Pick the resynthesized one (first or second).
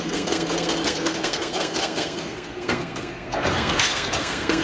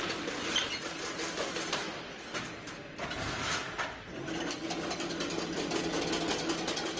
first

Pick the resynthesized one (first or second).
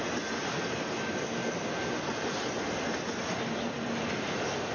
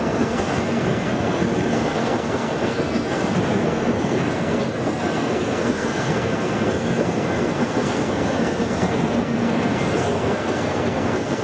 second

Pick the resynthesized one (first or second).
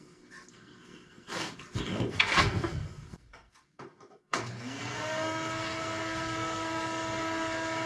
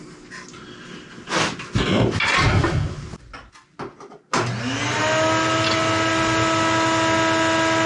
first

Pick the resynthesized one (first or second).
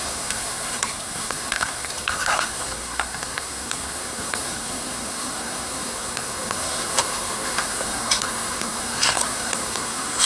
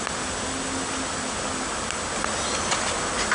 first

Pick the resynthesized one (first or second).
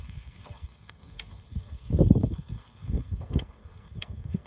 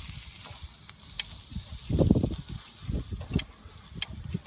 first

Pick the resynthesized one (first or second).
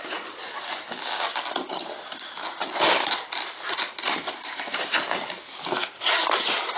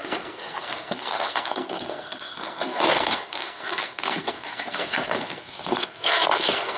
second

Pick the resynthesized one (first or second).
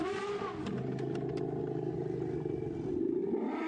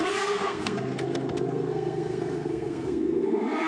second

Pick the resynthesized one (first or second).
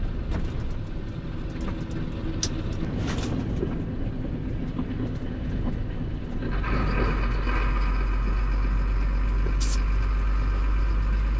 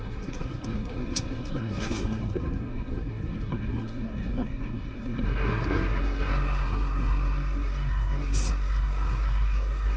second